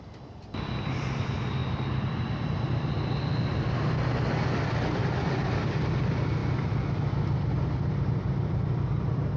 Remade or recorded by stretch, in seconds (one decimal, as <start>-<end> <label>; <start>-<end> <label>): 0.0-1.6 remade; 1.6-5.0 recorded; 5.0-6.4 remade; 6.4-9.4 recorded